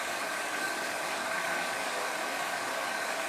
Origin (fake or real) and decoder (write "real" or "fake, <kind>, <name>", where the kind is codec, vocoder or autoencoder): fake, codec, DAC